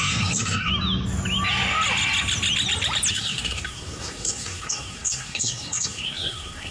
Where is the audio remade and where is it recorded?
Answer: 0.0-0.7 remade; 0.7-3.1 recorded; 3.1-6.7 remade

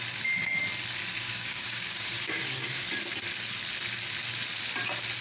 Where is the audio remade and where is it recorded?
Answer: 0.0-1.2 recorded; 1.2-2.8 remade; 2.8-5.2 recorded

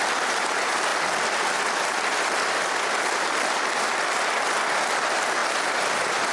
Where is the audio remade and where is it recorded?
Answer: 0.0-6.3 recorded

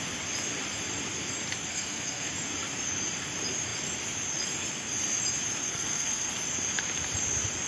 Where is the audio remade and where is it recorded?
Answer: 0.0-1.7 recorded; 1.7-2.3 remade; 2.3-5.6 recorded; 5.6-6.3 remade; 6.3-7.7 recorded

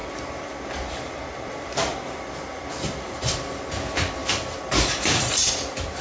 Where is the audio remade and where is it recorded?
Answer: 0.0-3.6 remade; 3.6-4.2 recorded; 4.2-5.5 remade; 5.5-6.0 recorded

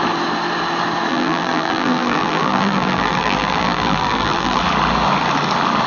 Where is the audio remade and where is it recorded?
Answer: 0.0-1.1 recorded; 1.1-4.6 remade; 4.6-5.9 recorded